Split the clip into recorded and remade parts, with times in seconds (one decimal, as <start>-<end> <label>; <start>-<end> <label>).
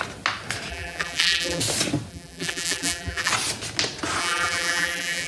0.0-0.7 recorded; 0.7-1.6 remade; 1.6-2.1 recorded; 2.1-3.3 remade; 3.3-4.2 recorded; 4.2-5.3 remade